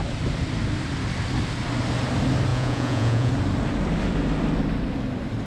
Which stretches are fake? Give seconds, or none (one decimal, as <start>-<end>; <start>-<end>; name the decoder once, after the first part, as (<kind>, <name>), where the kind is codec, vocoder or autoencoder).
2.5-3.3 (vocoder, Vocos)